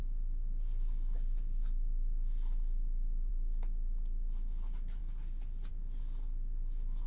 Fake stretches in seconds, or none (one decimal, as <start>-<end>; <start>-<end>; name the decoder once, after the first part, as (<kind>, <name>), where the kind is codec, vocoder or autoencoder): none